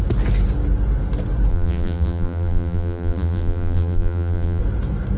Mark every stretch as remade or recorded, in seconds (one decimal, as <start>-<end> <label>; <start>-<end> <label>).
0.0-1.5 recorded; 1.5-4.6 remade; 4.6-5.2 recorded